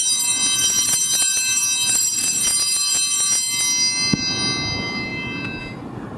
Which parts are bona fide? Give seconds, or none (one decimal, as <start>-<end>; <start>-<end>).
0.0-6.2